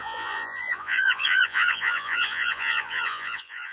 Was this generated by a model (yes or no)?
yes